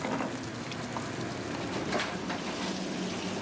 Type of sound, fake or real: real